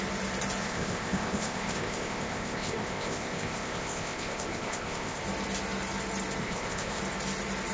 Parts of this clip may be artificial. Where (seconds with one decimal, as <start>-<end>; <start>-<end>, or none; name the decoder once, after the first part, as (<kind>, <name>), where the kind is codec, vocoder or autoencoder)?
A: 0.6-5.2 (codec, ZipCodec); 6.4-7.0

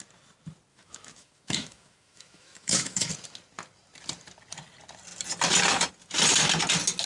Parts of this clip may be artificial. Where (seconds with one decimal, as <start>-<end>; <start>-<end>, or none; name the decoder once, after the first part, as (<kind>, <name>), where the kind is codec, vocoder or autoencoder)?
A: 0.7-3.1 (autoencoder, DAC-VAE)

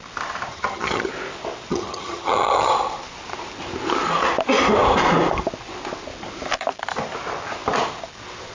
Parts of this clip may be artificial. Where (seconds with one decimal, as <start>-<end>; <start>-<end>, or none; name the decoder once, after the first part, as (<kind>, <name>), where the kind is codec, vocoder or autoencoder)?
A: 0.5-1.1 (vocoder, HiFi-GAN); 1.7-2.7

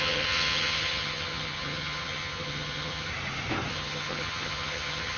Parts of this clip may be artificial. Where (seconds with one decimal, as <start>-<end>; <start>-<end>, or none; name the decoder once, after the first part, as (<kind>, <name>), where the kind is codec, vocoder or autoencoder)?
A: 0.0-3.1 (vocoder, HiFi-GAN); 3.7-5.2

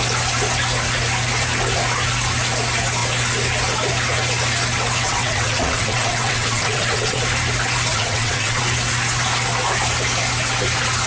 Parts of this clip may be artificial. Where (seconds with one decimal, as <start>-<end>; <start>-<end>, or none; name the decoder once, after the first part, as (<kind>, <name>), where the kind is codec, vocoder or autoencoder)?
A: 5.0-7.2 (vocoder, WaveNeXt); 7.9-8.6